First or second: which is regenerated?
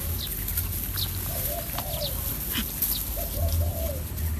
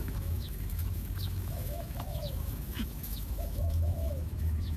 second